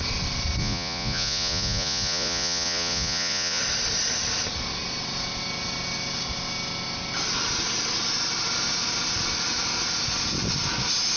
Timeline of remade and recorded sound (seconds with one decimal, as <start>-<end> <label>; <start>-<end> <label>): 0.0-0.6 recorded; 0.6-3.6 remade; 3.6-11.2 recorded